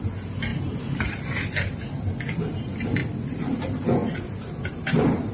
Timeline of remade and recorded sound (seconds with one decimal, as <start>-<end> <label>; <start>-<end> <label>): 0.0-3.0 recorded; 3.0-3.6 remade; 3.6-5.3 recorded